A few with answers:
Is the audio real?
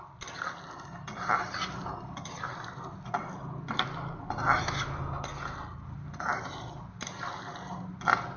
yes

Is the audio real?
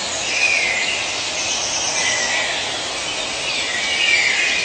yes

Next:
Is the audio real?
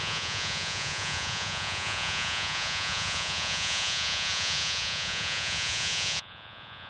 no